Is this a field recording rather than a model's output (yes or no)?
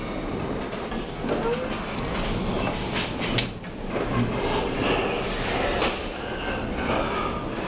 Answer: yes